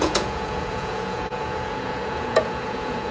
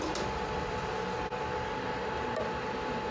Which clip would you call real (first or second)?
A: second